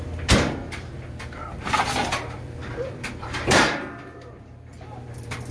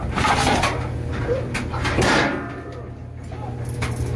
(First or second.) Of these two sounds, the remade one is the first